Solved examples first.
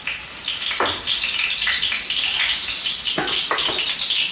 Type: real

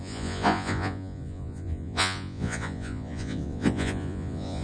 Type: fake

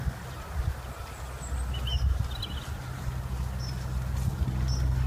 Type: real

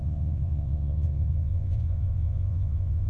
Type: fake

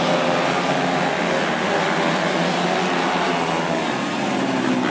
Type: real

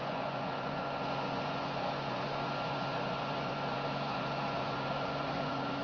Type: fake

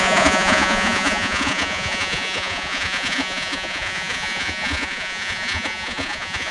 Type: fake